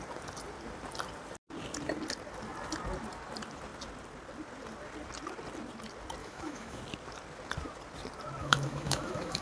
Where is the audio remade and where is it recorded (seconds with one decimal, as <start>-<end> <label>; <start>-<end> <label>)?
0.0-6.2 recorded; 6.2-6.8 remade; 6.8-8.4 recorded; 8.4-9.4 remade